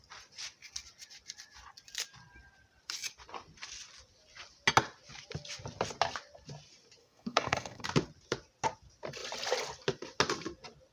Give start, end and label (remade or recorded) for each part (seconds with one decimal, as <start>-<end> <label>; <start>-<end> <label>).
0.0-7.0 recorded; 7.0-7.8 remade; 7.8-10.9 recorded